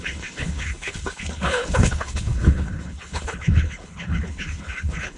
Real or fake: fake